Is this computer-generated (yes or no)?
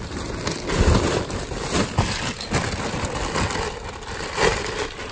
no